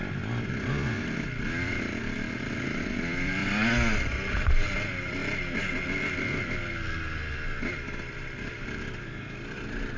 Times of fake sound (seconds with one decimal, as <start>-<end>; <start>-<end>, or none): 0.0-3.4; 4.3-5.2; 8.1-10.0